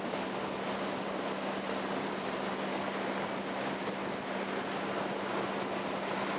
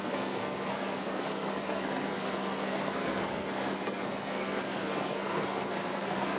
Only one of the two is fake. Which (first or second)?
second